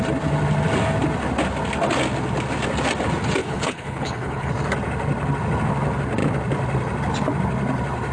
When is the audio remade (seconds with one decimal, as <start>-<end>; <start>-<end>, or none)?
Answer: 3.4-4.5